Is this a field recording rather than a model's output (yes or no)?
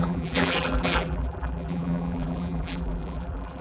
no